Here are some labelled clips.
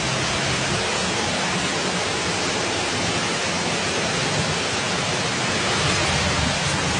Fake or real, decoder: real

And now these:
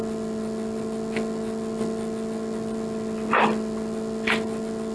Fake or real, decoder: real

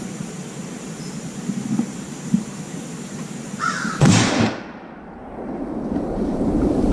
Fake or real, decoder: fake, vocoder, BigVGAN v2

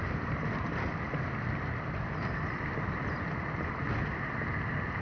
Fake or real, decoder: fake, vocoder, BigVGAN v2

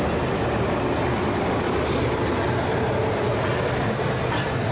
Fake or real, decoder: real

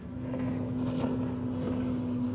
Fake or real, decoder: real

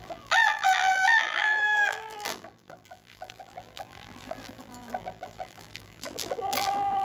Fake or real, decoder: fake, vocoder, BigVGAN v2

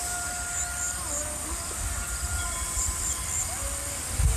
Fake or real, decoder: fake, vocoder, BigVGAN v2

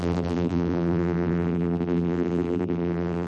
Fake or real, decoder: fake, vocoder, BigVGAN v2